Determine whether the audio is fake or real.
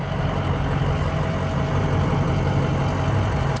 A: real